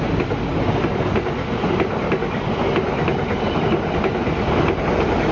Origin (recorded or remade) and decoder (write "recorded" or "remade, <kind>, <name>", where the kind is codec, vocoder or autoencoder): recorded